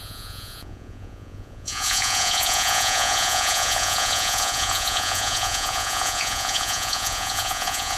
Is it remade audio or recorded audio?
remade